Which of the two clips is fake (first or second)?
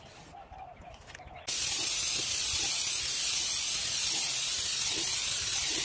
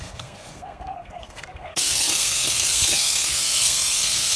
second